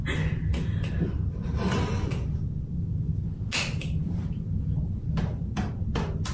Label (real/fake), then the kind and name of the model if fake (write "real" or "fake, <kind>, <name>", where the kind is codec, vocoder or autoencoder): real